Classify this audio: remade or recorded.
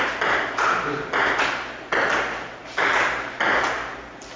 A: recorded